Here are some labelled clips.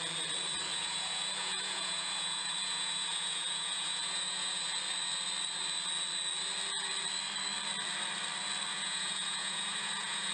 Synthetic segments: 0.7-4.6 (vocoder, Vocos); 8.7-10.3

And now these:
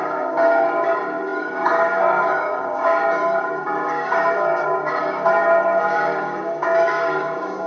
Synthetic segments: 0.0-7.7 (codec, DAC)

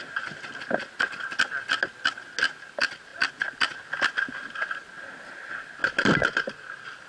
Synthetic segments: 5.8-7.1 (vocoder, BigVGAN v2)

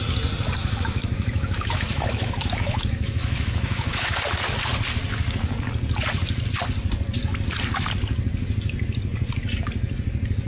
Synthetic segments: 0.6-4.2 (autoencoder, DAC-VAE)

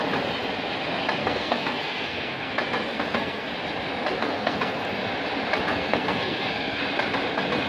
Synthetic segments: 1.2-2.5 (codec, SNAC); 2.9-3.5; 4.2-4.8; 5.7-6.8

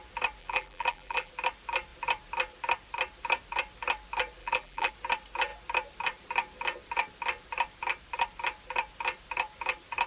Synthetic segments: 0.4-1.3 (vocoder, BigVGAN v2); 4.4-4.9

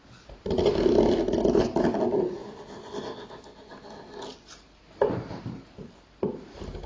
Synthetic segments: 2.4-3.0 (vocoder, BigVGAN v2)

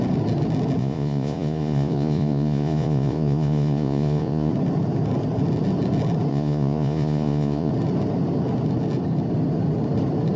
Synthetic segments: 0.8-4.5 (vocoder, Vocos); 6.3-7.7